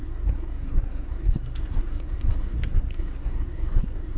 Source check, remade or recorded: remade